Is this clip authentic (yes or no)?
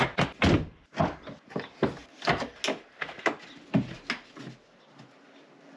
yes